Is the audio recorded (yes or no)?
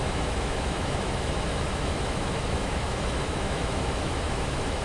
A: no